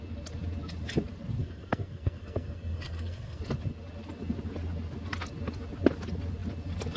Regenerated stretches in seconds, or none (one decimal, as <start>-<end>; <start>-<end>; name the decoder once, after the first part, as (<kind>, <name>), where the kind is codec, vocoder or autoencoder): 1.4-3.4 (codec, SNAC)